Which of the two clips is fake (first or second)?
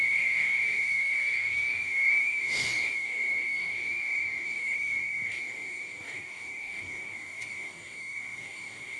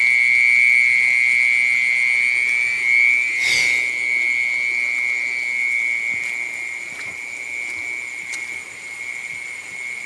first